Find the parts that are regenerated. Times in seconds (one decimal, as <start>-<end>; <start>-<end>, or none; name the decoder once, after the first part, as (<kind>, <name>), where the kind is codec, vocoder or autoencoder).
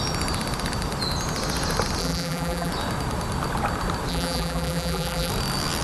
2.0-2.7 (vocoder, BigVGAN v2); 4.1-5.3